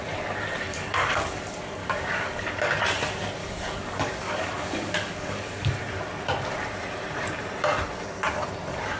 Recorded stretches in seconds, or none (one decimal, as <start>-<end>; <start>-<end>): 0.0-0.7; 1.4-1.8; 2.7-3.4; 5.7-9.0